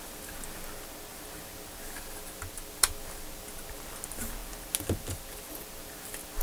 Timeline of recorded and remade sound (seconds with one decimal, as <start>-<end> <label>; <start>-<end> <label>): 0.0-6.4 recorded